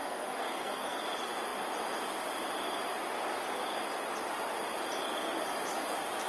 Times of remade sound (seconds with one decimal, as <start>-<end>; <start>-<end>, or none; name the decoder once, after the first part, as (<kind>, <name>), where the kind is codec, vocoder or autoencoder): 0.0-1.0 (codec, SNAC)